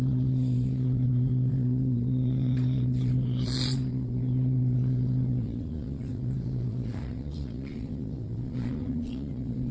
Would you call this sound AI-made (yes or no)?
yes